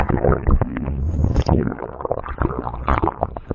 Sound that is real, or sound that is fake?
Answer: fake